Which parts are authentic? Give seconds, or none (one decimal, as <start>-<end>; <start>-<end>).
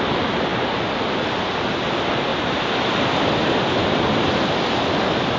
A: 0.0-2.3; 4.4-5.4